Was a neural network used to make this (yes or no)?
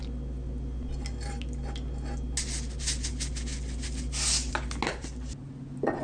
no